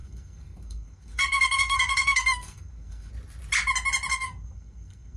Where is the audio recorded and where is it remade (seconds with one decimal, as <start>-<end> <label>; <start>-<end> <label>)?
0.0-3.1 remade; 3.1-4.1 recorded; 4.1-5.2 remade